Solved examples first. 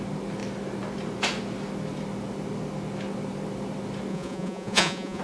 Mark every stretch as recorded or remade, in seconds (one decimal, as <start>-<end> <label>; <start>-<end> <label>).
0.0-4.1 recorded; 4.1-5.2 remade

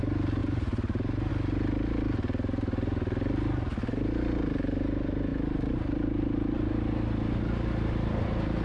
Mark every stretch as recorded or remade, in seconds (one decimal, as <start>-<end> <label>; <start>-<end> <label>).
0.0-0.4 recorded; 0.4-1.3 remade; 1.3-5.3 recorded; 5.3-6.7 remade; 6.7-8.6 recorded

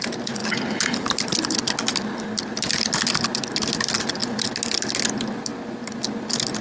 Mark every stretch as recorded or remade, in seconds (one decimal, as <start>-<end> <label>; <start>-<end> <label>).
0.0-6.6 recorded

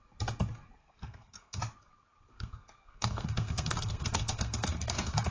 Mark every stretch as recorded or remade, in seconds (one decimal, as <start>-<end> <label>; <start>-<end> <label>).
0.0-0.8 recorded; 0.8-1.6 remade; 1.6-2.3 recorded; 2.3-5.3 remade

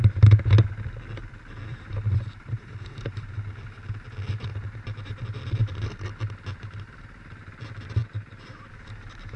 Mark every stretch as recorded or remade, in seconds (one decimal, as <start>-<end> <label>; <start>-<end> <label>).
0.0-1.7 recorded; 1.7-3.3 remade; 3.3-5.6 recorded; 5.6-7.2 remade; 7.2-8.0 recorded; 8.0-8.7 remade; 8.7-9.4 recorded